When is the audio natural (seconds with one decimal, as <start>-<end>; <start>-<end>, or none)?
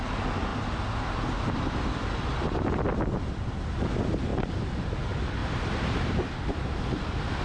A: 0.0-4.3; 5.0-5.4; 7.0-7.4